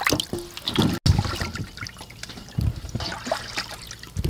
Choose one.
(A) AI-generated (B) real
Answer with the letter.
B